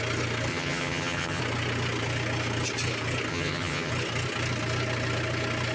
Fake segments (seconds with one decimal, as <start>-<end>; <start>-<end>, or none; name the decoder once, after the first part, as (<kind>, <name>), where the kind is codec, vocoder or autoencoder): 0.5-1.4 (vocoder, HiFi-GAN); 3.3-3.9